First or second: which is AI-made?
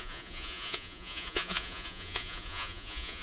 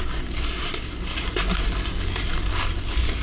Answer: first